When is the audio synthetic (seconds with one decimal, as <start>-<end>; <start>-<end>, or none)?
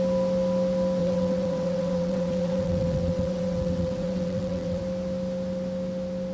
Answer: 1.0-4.8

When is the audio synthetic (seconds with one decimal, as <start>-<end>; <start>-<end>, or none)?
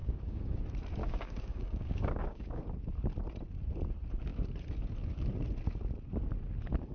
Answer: 0.0-0.6; 1.0-2.6